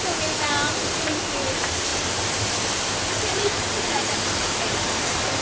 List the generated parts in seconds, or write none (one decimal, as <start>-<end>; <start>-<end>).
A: 1.9-5.4